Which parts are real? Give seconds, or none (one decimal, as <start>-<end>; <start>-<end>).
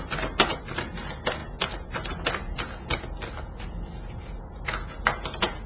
0.0-5.7